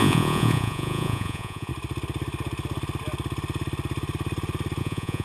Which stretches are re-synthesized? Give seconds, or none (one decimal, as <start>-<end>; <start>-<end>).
0.0-1.7; 4.8-5.2